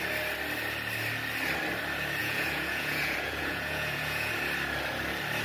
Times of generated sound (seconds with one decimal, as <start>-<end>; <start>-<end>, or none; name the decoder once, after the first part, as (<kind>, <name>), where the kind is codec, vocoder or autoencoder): 2.2-4.3 (vocoder, Vocos)